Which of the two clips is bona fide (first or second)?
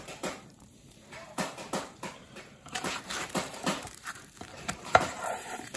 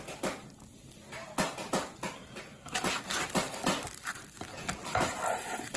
second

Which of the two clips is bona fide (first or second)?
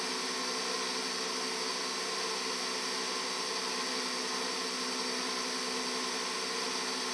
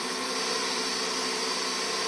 first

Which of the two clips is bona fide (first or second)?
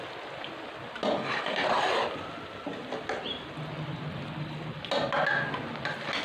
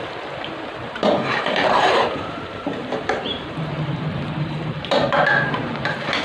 first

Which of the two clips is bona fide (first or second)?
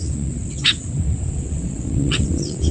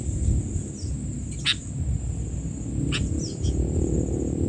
second